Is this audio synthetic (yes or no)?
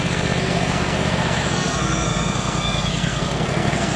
yes